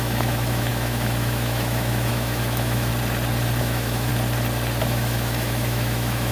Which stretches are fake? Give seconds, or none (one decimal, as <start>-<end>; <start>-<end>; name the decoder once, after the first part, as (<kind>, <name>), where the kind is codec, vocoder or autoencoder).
0.0-2.9 (autoencoder, DAC-VAE); 3.6-4.1; 4.8-6.3